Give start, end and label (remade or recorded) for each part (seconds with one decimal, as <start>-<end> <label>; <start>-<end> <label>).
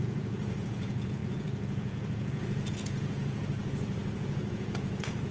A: 0.0-5.3 remade